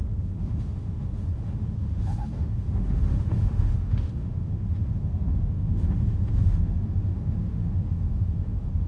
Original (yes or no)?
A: no